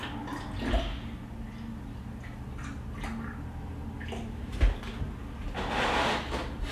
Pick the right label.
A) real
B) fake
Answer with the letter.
A